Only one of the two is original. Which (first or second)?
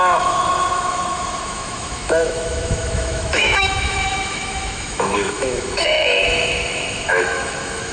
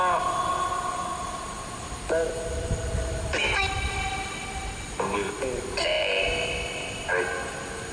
second